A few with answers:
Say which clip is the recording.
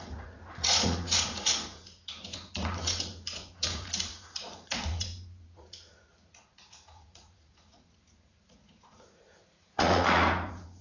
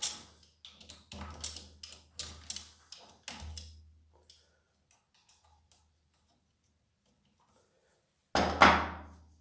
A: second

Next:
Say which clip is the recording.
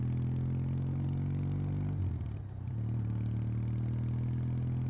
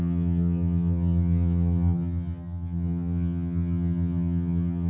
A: first